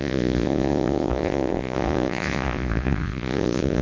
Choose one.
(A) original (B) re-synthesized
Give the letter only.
B